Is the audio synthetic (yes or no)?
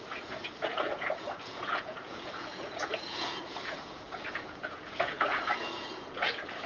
yes